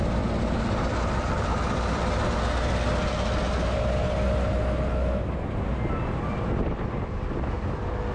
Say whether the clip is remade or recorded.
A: recorded